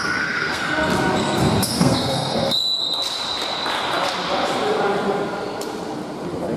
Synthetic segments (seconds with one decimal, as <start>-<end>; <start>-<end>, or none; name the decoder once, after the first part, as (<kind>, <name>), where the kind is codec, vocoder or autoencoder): 0.0-0.6 (codec, SNAC); 1.2-2.8